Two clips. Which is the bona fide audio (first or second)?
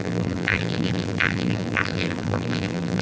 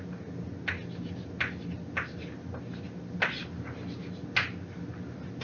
second